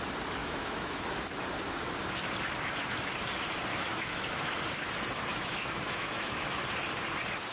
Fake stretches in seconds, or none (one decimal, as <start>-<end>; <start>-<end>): 0.4-1.0; 3.7-4.5; 5.3-6.6